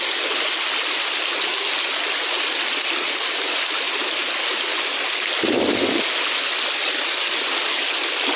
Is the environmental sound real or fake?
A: real